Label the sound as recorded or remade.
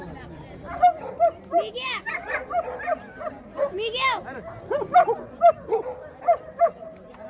recorded